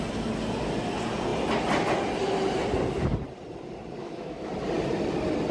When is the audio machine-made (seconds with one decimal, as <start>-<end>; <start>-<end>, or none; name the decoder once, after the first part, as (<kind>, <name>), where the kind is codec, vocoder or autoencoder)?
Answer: 4.0-4.5 (autoencoder, DAC-VAE)